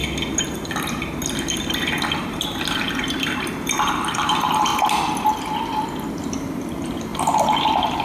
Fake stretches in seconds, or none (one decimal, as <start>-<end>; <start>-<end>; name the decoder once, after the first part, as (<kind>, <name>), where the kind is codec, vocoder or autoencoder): 2.2-4.7 (vocoder, BigVGAN v2); 6.2-7.1; 7.6-8.0